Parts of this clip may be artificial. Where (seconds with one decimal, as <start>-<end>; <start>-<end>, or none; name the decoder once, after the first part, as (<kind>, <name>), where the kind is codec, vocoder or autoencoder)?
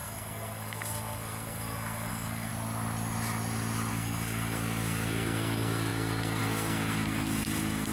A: 0.0-2.5 (codec, SNAC); 3.9-7.9